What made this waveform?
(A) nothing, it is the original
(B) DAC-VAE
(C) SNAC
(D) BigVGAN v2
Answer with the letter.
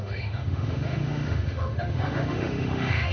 B